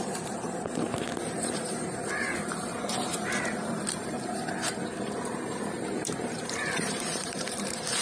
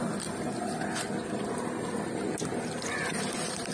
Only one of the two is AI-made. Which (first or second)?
first